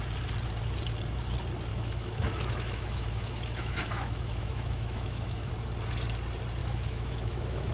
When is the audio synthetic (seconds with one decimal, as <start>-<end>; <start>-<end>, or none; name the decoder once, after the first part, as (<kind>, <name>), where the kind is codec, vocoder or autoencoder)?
1.7-5.5 (autoencoder, DAC-VAE); 6.6-7.7